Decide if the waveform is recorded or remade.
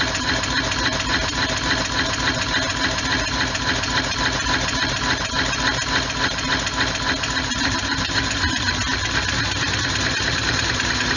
recorded